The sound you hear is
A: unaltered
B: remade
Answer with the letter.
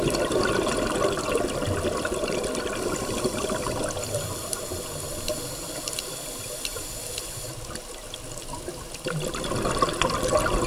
A